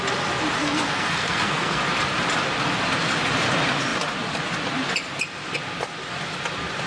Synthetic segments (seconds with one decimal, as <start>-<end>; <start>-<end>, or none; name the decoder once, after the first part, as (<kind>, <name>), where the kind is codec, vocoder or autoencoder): 0.6-1.8 (codec, SNAC)